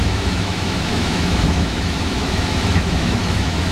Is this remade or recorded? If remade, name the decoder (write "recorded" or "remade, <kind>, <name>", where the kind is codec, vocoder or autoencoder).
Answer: remade, autoencoder, DAC-VAE